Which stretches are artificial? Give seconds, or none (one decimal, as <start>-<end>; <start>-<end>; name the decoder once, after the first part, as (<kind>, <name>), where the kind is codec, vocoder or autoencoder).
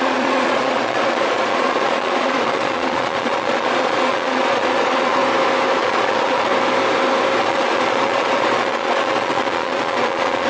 0.0-5.2 (vocoder, Vocos); 5.8-6.5; 7.4-10.5